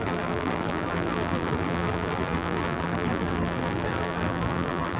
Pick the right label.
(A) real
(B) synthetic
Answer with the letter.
B